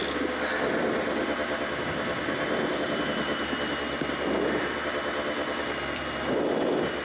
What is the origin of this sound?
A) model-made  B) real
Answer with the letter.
B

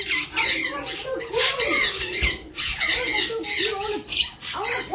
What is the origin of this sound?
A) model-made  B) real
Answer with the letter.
B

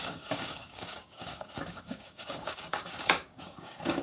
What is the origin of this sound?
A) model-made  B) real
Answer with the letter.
A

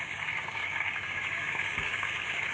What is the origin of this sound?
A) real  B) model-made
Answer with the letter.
B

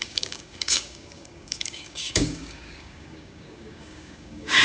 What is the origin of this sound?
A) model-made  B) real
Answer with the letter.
A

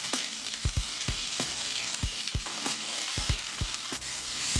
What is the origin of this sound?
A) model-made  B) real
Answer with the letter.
A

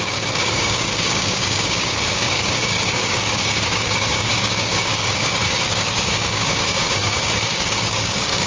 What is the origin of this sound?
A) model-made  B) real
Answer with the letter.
A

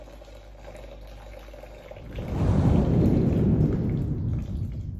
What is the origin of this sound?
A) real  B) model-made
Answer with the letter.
A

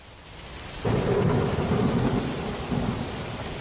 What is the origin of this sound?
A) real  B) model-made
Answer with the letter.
A